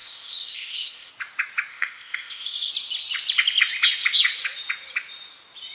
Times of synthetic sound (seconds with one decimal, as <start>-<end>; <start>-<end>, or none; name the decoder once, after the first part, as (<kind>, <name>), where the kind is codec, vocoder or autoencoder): 0.0-1.1 (codec, ZipCodec); 1.7-2.7